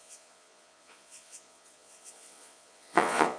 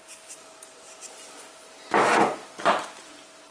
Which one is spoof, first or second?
first